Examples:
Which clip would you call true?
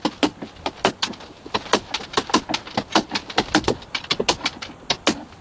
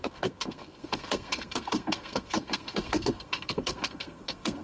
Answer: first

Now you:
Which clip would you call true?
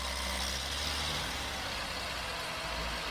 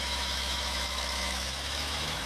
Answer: first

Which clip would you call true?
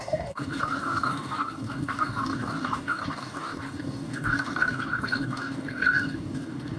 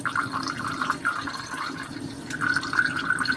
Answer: second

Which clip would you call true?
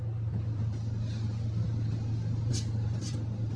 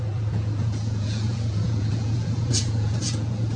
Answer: first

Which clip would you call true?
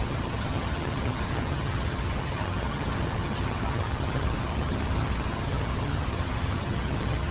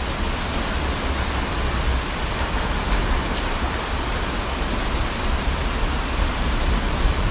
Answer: second